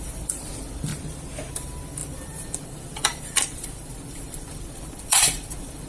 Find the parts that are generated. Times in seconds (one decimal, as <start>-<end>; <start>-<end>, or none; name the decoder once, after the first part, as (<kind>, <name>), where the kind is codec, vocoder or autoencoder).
0.0-0.9 (vocoder, BigVGAN v2); 1.5-5.9